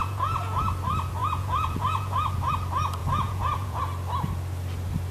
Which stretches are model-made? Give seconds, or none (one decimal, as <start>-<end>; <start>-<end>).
0.0-0.7; 1.2-2.5; 3.0-3.8